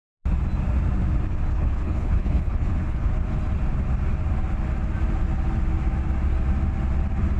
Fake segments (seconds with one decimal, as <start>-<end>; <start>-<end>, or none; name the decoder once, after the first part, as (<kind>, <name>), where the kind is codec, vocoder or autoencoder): 1.5-3.1 (codec, HILCodec)